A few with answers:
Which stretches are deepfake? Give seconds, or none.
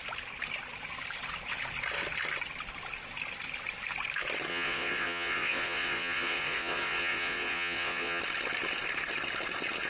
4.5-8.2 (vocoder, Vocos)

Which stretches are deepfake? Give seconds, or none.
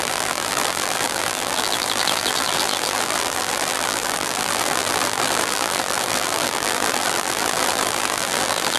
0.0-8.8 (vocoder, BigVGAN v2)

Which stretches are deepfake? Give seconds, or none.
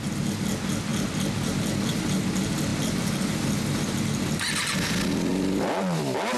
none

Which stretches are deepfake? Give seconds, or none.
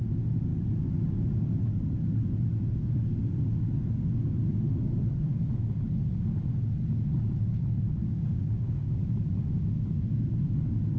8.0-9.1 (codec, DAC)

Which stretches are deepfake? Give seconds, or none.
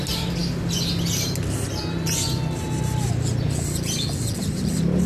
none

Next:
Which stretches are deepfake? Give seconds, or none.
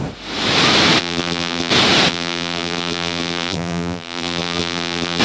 1.0-1.7 (vocoder, BigVGAN v2); 2.1-5.2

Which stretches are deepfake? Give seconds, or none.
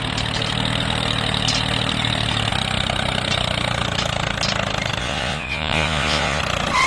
5.0-6.4 (vocoder, Vocos)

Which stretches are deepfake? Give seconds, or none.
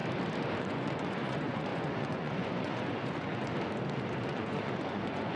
0.6-3.5 (vocoder, Vocos); 4.2-5.4